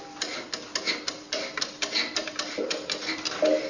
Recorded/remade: recorded